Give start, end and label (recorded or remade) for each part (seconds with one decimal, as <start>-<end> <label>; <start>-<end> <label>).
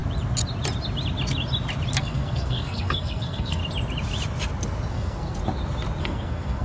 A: 0.0-2.0 recorded; 2.0-3.6 remade; 3.6-4.9 recorded; 4.9-5.4 remade; 5.4-6.0 recorded; 6.0-6.6 remade